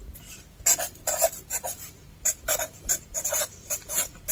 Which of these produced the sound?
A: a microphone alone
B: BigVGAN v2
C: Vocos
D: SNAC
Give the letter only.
B